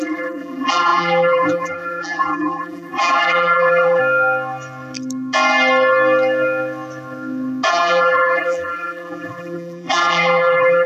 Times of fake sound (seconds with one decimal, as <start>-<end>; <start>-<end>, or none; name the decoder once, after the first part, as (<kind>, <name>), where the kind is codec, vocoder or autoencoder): 0.0-4.0 (vocoder, BigVGAN v2); 7.7-10.9